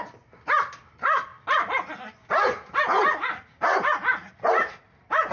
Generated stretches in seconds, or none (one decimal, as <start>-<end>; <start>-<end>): none